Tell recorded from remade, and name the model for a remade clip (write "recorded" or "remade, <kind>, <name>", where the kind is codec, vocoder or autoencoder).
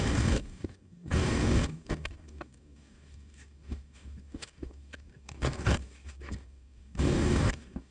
remade, codec, DAC